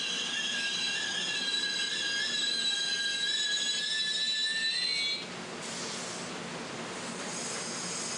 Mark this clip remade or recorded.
recorded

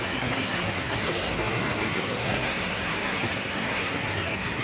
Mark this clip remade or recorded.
remade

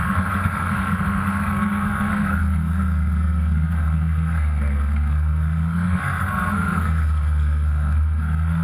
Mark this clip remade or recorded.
remade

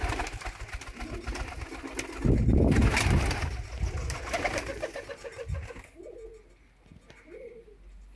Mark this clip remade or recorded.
recorded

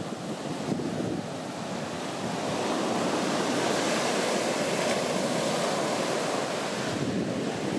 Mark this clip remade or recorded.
recorded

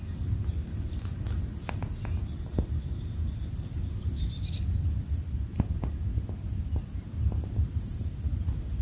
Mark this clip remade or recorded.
recorded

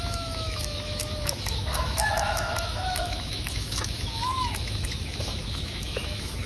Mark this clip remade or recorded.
remade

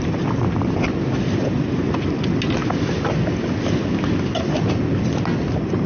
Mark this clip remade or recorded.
recorded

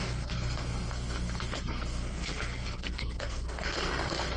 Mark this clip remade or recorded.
remade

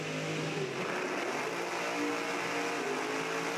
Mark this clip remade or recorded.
recorded